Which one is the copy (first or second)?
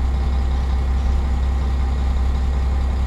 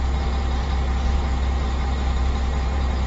second